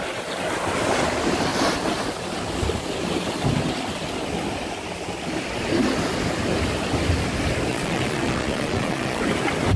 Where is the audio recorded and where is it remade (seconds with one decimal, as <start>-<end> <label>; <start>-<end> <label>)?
0.0-7.7 recorded; 7.7-9.2 remade; 9.2-9.8 recorded